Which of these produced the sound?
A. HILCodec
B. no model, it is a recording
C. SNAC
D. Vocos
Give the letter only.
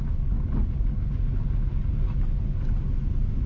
B